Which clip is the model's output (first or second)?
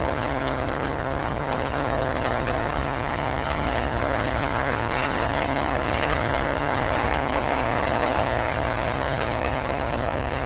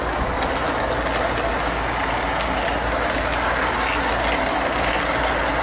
first